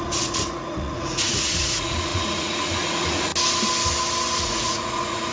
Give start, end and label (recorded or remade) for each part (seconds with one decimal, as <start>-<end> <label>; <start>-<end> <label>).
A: 0.0-3.3 remade; 3.3-4.4 recorded; 4.4-5.3 remade